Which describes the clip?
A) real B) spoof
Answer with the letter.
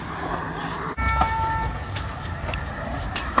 A